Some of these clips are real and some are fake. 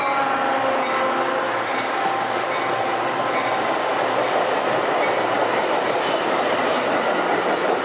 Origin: real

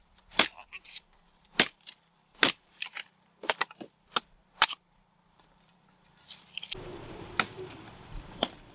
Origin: fake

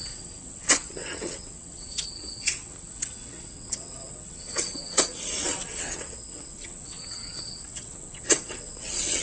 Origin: fake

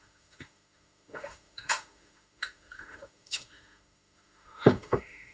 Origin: fake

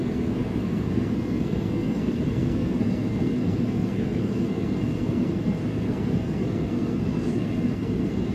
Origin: fake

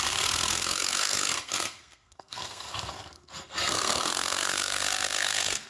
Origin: fake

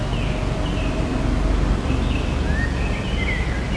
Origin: real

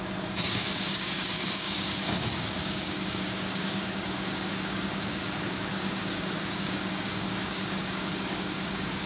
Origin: fake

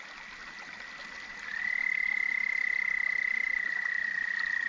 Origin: real